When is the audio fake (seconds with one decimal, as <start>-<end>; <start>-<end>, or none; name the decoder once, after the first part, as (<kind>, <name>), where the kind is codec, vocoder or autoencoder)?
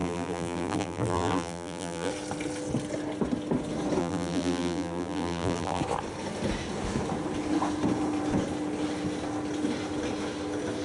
0.0-2.1 (vocoder, BigVGAN v2); 4.0-5.8